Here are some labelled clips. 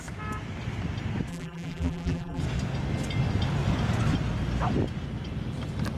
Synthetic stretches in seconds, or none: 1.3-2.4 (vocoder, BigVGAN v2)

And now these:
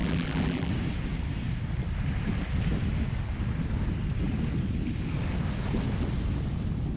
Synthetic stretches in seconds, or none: 0.0-0.7 (vocoder, BigVGAN v2)